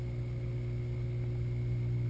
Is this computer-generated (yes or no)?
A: no